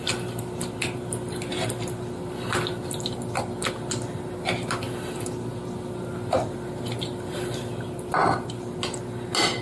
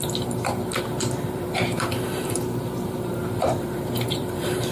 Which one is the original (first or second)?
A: first